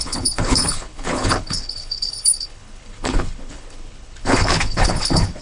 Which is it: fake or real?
fake